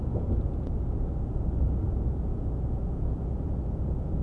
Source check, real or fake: fake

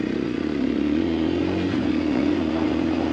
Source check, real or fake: fake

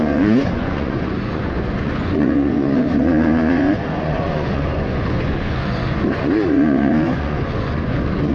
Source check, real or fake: fake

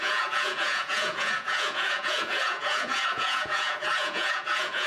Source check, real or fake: fake